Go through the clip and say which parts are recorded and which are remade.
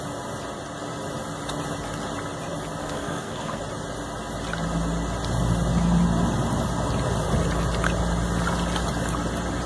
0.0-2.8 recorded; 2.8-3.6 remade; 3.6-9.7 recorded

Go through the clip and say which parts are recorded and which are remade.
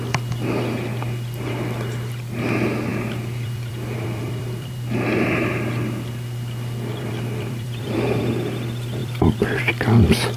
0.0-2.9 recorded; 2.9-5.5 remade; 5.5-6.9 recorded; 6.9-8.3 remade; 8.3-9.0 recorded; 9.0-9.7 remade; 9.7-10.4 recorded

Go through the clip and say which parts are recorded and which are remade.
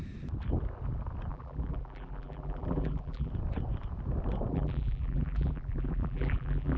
0.0-1.3 recorded; 1.3-3.3 remade; 3.3-4.5 recorded; 4.5-6.8 remade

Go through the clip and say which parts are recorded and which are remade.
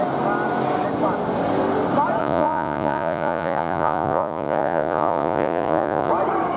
0.0-2.2 recorded; 2.2-6.1 remade; 6.1-6.6 recorded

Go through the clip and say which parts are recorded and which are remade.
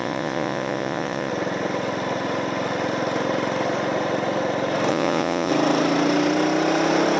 0.0-1.3 remade; 1.3-4.9 recorded; 4.9-5.5 remade; 5.5-7.2 recorded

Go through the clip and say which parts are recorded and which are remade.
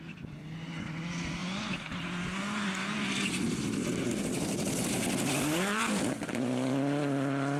0.0-7.6 recorded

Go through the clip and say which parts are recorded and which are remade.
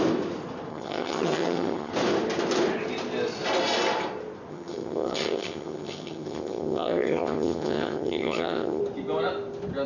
0.0-0.7 recorded; 0.7-1.9 remade; 1.9-4.5 recorded; 4.5-8.8 remade; 8.8-9.9 recorded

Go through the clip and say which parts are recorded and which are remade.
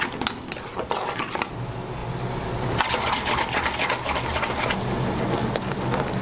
0.0-6.2 recorded